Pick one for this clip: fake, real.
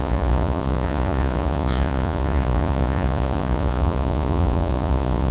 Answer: fake